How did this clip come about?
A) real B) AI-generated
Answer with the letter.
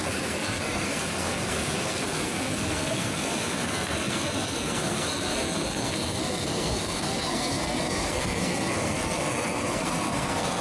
B